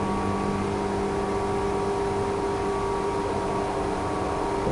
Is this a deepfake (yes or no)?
no